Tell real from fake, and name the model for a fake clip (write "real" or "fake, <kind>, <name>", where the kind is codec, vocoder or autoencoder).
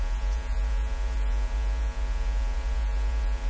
fake, vocoder, Vocos